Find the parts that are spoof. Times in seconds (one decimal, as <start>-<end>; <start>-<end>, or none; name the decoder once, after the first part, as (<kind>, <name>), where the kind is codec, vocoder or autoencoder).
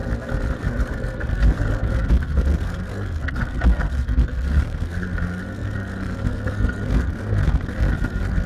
0.6-8.5 (codec, SNAC)